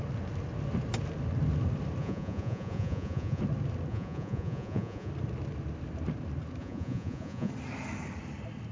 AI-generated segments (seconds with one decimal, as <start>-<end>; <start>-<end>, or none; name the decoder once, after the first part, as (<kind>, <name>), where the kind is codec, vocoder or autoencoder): 2.0-3.4 (vocoder, Vocos); 3.9-5.1; 6.6-7.5